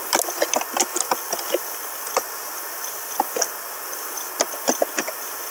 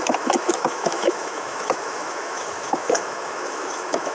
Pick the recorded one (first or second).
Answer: first